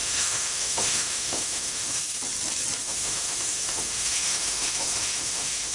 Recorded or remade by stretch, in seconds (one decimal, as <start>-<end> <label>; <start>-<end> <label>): 0.0-2.2 remade; 2.2-2.8 recorded; 2.8-5.7 remade